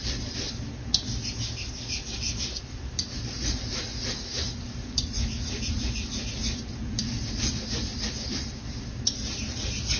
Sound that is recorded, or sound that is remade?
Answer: recorded